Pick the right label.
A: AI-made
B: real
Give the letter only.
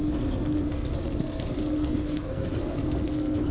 A